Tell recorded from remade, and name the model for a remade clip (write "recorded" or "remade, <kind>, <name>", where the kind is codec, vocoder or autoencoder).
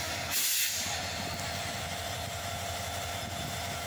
recorded